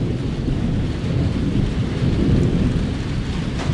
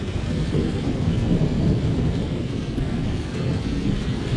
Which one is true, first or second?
first